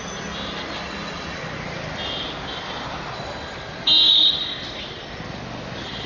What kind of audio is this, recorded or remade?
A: recorded